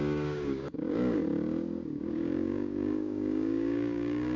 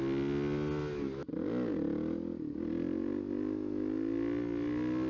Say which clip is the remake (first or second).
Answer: first